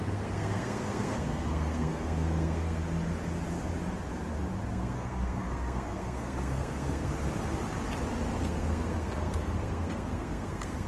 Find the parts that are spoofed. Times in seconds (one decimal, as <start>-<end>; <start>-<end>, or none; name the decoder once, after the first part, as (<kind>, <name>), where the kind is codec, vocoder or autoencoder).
0.0-2.8 (codec, SNAC); 4.7-7.1; 8.4-10.9